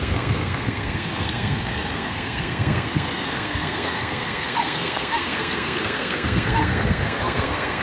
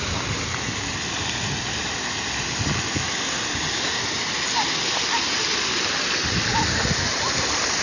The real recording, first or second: second